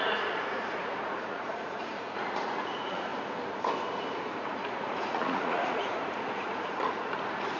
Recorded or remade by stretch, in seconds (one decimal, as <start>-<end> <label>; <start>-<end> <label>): 0.0-3.1 remade; 3.1-4.4 recorded; 4.4-7.6 remade